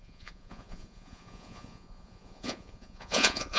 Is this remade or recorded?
remade